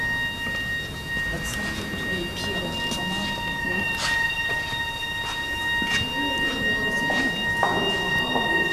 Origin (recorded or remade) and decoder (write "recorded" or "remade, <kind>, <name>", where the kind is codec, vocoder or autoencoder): recorded